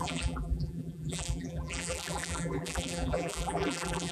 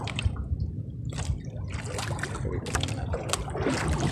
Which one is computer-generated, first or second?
first